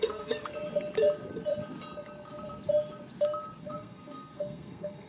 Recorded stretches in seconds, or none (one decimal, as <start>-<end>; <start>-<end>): 0.5-3.6